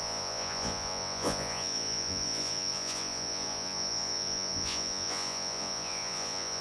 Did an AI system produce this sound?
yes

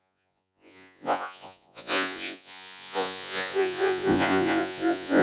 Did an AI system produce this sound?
yes